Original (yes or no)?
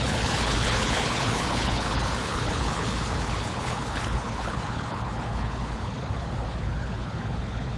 no